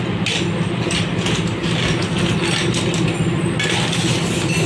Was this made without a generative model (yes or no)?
yes